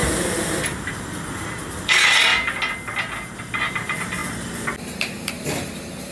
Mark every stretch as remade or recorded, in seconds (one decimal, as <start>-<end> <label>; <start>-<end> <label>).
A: 0.0-2.3 remade; 2.3-3.7 recorded; 3.7-4.2 remade; 4.2-5.3 recorded; 5.3-6.1 remade